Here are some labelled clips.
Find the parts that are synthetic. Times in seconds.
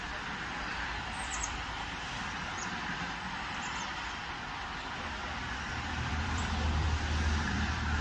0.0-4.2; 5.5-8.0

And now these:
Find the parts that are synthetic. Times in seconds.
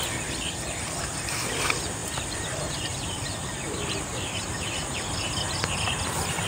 2.0-5.3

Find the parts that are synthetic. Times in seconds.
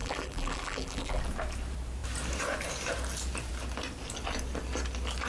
0.0-1.2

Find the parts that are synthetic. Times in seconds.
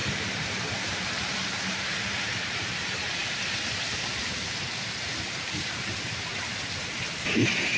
0.0-7.8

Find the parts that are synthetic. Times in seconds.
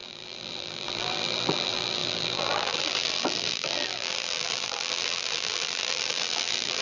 0.0-6.8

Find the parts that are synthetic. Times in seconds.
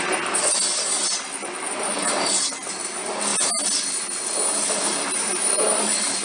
none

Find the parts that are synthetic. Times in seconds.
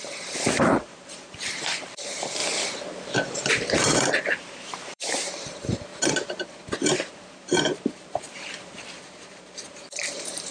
0.0-2.4; 3.5-5.9; 7.6-10.5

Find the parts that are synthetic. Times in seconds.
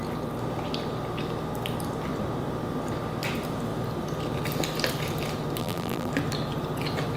5.6-6.1